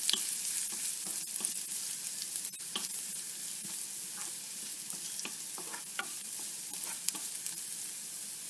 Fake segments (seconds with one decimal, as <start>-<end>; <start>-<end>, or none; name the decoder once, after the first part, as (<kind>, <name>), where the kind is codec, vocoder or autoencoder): none